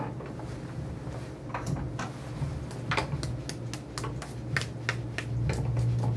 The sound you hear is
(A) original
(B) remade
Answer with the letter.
A